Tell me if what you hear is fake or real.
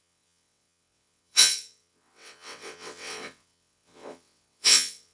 fake